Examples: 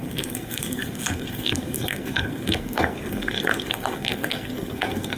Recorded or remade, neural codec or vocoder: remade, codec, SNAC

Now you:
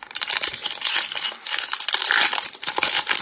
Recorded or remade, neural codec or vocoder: remade, vocoder, BigVGAN v2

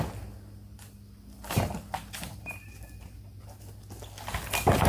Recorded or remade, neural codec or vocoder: recorded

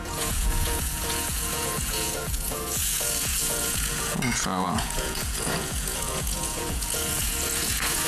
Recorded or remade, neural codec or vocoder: remade, vocoder, Vocos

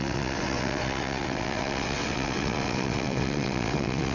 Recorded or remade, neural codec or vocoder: remade, vocoder, WaveNeXt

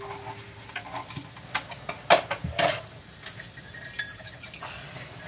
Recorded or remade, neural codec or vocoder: recorded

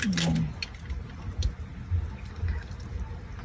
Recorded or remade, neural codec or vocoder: recorded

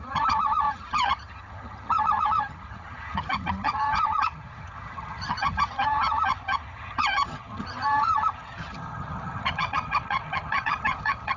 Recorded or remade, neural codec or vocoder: remade, vocoder, HiFi-GAN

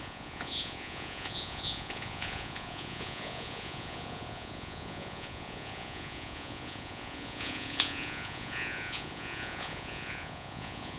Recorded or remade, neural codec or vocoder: remade, vocoder, Vocos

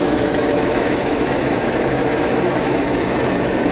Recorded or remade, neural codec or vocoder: remade, autoencoder, DAC-VAE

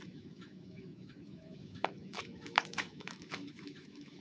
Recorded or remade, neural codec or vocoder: remade, autoencoder, DAC-VAE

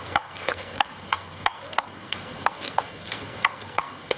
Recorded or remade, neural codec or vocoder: remade, codec, SNAC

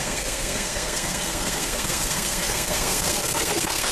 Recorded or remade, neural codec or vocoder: remade, codec, SNAC